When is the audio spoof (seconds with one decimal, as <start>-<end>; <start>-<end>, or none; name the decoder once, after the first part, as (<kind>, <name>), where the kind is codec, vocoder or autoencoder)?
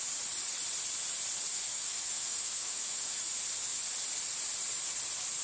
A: 1.5-3.2 (autoencoder, DAC-VAE)